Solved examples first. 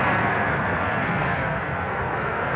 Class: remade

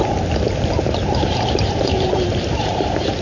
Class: remade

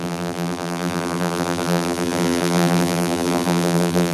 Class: remade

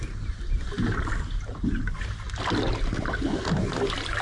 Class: recorded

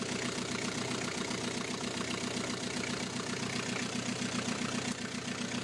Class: recorded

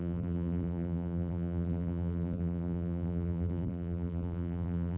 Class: remade